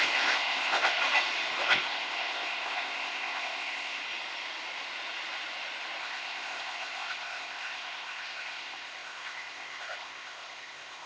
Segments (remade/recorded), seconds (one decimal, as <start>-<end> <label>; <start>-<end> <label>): 0.0-1.0 remade; 1.0-1.6 recorded; 1.6-4.0 remade; 4.0-6.0 recorded; 6.0-11.1 remade